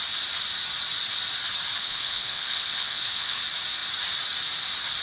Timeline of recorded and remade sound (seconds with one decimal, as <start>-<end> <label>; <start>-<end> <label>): 0.0-1.8 recorded; 1.8-3.4 remade; 3.4-5.0 recorded